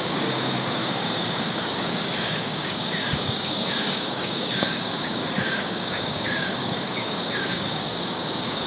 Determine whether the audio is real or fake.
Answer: fake